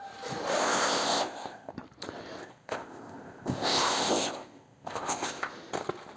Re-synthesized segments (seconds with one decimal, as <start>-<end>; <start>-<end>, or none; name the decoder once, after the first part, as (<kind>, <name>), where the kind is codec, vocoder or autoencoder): 0.6-1.7 (codec, ZipCodec); 2.4-5.5